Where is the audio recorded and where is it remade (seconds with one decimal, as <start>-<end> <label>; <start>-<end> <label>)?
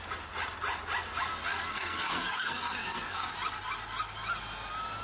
0.0-1.5 recorded; 1.5-3.3 remade; 3.3-5.0 recorded